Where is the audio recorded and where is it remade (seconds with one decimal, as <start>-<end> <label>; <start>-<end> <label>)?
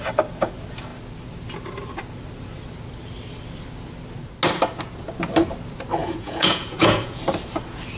0.0-6.0 recorded; 6.0-7.2 remade; 7.2-8.0 recorded